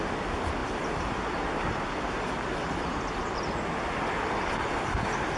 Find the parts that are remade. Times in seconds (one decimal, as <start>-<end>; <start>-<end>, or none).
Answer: none